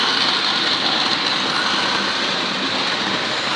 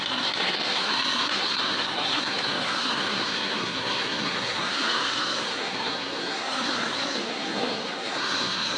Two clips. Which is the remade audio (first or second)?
second